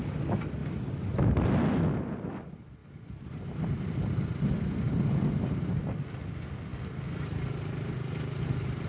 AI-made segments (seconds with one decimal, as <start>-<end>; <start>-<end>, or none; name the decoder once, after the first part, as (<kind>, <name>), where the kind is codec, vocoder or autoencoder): none